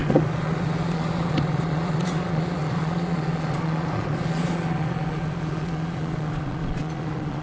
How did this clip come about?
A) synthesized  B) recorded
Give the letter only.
A